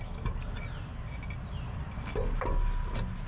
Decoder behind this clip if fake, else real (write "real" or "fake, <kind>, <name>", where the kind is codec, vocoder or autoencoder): real